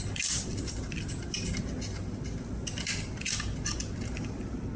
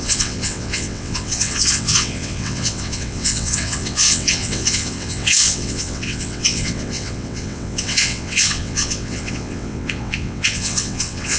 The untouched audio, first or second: first